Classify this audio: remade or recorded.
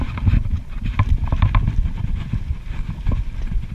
recorded